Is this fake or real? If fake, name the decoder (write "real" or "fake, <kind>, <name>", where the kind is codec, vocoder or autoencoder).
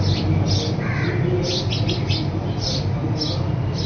real